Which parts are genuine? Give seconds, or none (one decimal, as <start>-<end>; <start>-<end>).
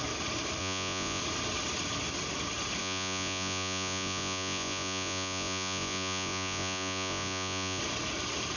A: 0.0-0.6; 1.2-2.8; 7.8-8.6